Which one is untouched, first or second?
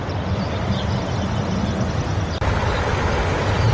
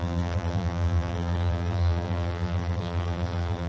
first